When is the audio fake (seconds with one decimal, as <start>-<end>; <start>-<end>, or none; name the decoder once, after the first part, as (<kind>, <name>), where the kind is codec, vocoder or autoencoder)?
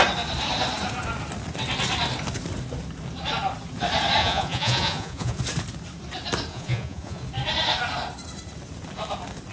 4.2-5.4 (vocoder, Vocos); 6.5-7.2